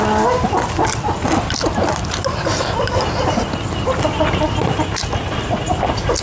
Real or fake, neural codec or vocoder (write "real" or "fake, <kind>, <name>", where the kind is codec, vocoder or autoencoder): real